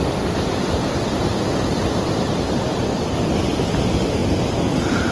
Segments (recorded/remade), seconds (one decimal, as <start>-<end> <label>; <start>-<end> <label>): 0.0-5.1 recorded